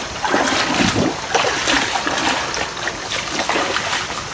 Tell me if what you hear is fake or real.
real